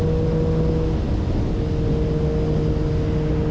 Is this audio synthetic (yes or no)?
no